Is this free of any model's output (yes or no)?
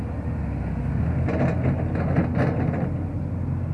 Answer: yes